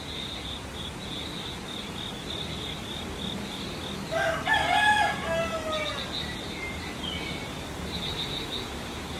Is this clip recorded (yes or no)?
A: yes